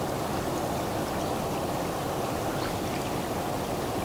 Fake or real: real